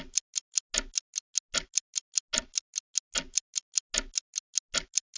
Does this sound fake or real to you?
real